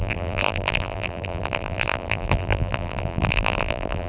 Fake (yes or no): yes